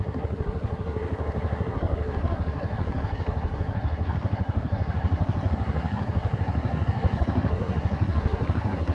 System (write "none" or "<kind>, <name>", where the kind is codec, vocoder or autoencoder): codec, SNAC